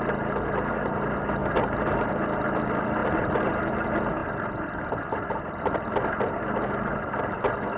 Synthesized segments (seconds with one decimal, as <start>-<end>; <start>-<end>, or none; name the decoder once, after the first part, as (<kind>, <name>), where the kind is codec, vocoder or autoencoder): 1.4-2.1 (vocoder, BigVGAN v2); 3.0-3.5